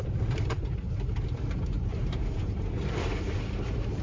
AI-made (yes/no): yes